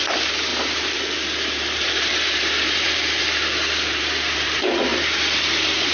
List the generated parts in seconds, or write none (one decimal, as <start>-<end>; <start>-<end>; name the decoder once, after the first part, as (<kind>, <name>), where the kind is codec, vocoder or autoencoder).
0.0-5.9 (vocoder, BigVGAN v2)